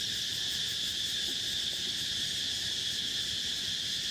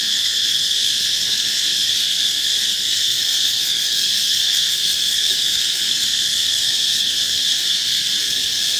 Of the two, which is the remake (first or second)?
second